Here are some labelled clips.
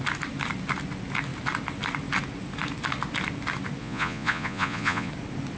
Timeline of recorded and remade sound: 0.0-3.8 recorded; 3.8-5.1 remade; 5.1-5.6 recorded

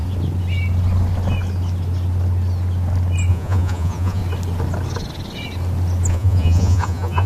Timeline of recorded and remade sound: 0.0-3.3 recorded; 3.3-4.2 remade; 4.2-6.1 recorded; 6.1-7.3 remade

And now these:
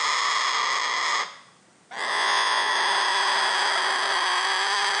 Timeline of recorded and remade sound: 0.0-2.1 recorded; 2.1-2.7 remade; 2.7-5.0 recorded

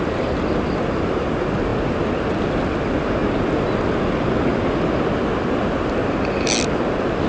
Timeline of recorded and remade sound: 0.0-7.3 recorded

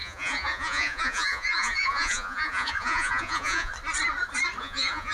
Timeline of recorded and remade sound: 0.0-3.7 remade; 3.7-4.6 recorded; 4.6-5.1 remade

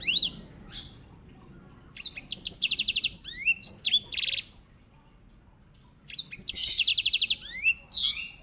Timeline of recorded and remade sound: 0.0-8.4 recorded

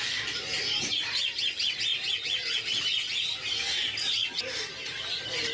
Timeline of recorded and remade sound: 0.0-5.5 recorded